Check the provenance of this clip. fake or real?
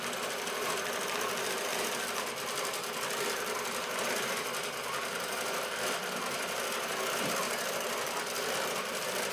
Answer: real